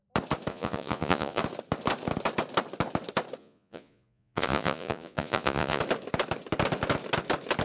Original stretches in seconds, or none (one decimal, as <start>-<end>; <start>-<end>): 0.0-0.5; 1.4-3.4; 5.8-7.6